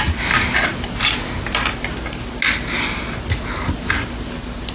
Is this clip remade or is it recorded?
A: recorded